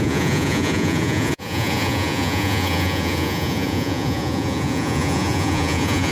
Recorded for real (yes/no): no